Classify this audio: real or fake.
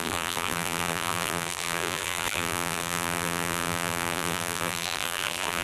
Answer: fake